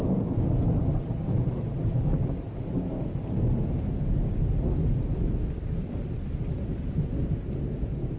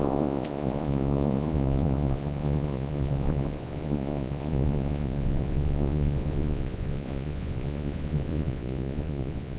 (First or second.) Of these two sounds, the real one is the first